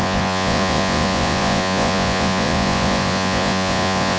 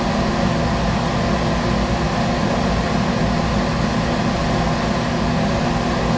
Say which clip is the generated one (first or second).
first